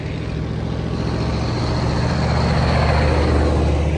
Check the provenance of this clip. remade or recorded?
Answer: recorded